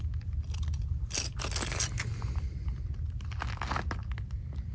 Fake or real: real